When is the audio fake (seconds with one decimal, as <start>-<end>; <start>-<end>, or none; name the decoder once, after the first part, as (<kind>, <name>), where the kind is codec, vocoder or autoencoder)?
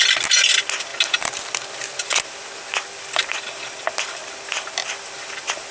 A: none